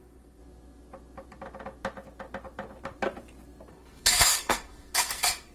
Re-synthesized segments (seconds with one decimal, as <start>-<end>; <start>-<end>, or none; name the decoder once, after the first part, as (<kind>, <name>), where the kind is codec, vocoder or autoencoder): 0.0-0.4 (codec, SNAC); 3.7-5.5

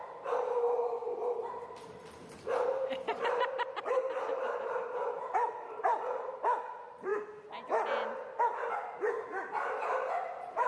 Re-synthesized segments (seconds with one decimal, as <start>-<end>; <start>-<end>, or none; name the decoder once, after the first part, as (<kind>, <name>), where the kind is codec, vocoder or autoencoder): 0.0-7.1 (vocoder, BigVGAN v2); 8.4-10.7

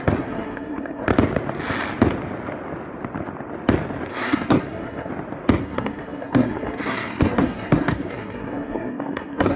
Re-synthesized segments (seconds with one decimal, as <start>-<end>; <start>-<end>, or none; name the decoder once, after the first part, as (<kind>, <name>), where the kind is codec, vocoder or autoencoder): 0.0-1.1 (codec, SNAC); 4.1-5.1; 5.6-9.6

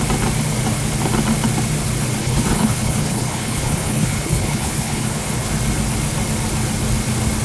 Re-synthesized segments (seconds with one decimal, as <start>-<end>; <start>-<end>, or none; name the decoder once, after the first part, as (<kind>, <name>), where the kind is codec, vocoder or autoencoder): 2.2-5.5 (codec, HILCodec)

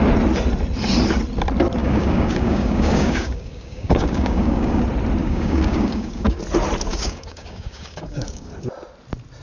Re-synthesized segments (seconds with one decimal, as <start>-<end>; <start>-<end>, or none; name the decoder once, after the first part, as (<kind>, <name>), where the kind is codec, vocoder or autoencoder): 1.8-4.8 (codec, DAC); 5.2-6.4; 6.9-8.5

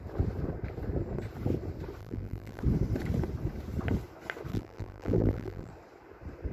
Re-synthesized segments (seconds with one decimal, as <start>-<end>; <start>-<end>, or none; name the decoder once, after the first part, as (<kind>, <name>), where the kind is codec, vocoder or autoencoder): 2.0-2.6 (vocoder, BigVGAN v2); 4.5-5.7